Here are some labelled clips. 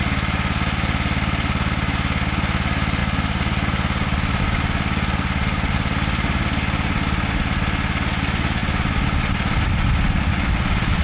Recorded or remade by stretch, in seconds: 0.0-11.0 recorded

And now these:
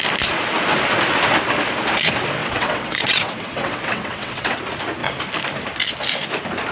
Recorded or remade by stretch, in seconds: 0.0-2.4 recorded; 2.4-4.6 remade; 4.6-6.7 recorded